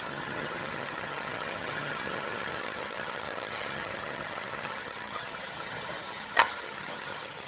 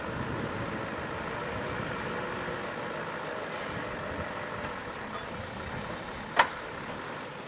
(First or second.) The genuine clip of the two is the second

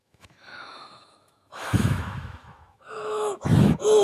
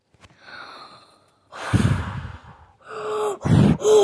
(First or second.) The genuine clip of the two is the second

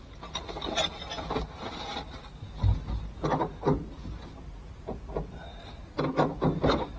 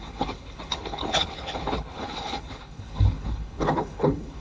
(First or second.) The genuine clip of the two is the first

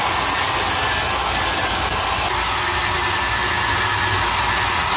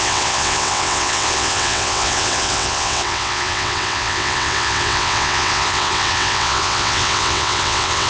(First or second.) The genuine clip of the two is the first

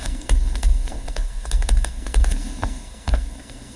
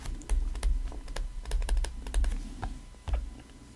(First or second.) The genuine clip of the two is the second